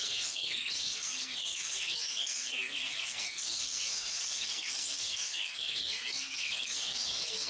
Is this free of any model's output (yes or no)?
no